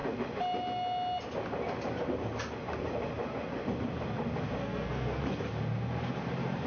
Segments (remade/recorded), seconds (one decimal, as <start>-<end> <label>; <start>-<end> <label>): 0.0-4.6 recorded; 4.6-5.2 remade; 5.2-6.7 recorded

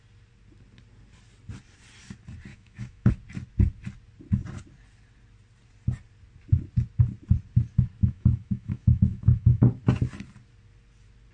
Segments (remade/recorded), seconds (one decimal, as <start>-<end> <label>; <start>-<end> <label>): 0.0-2.5 recorded; 2.5-3.1 remade; 3.1-8.0 recorded; 8.0-9.7 remade; 9.7-11.3 recorded

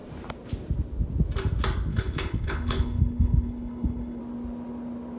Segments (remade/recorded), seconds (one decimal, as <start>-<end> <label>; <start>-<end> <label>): 0.0-1.9 recorded; 1.9-4.2 remade; 4.2-5.2 recorded